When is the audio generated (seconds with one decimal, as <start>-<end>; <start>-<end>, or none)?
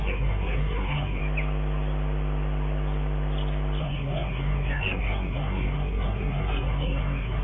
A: 0.0-1.2; 3.8-7.4